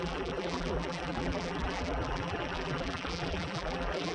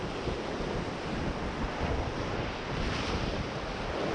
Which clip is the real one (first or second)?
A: second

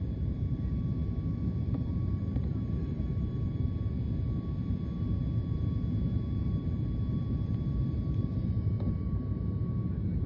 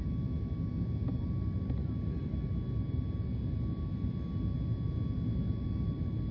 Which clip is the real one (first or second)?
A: second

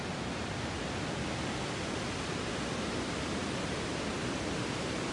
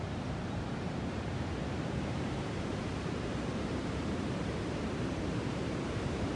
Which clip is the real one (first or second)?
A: first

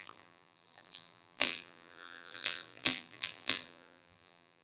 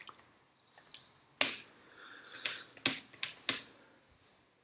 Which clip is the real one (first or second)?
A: second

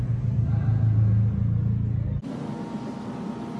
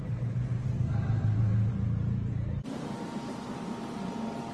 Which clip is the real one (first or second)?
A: first